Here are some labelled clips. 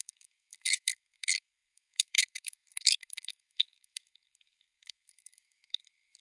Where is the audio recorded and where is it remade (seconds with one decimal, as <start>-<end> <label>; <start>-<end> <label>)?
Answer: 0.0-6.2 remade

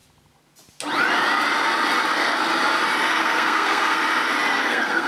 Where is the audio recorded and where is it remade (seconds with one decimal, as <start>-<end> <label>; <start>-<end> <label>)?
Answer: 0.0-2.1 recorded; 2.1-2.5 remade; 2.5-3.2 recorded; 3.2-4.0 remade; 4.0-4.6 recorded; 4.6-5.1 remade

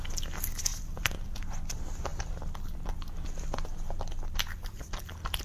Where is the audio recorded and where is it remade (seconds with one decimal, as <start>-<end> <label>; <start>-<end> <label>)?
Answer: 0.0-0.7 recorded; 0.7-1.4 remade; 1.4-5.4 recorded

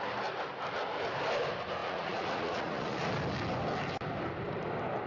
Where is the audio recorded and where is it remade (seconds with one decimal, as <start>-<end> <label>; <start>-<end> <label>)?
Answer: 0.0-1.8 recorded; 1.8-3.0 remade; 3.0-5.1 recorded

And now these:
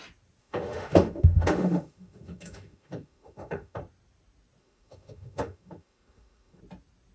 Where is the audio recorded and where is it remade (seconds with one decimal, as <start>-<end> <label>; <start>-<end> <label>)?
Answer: 0.0-0.4 recorded; 0.4-3.8 remade; 3.8-4.6 recorded; 4.6-6.6 remade; 6.6-7.1 recorded

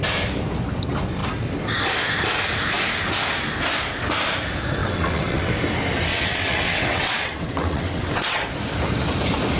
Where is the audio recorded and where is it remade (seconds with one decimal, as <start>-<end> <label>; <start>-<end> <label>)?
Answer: 0.0-4.8 recorded; 4.8-5.5 remade; 5.5-6.1 recorded; 6.1-8.4 remade; 8.4-9.6 recorded

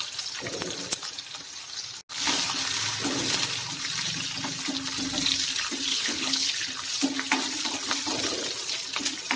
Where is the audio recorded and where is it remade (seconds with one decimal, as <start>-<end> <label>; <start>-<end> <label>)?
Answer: 0.0-5.9 recorded; 5.9-6.5 remade; 6.5-9.4 recorded